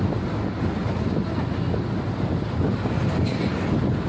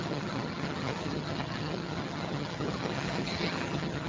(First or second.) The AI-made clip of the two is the second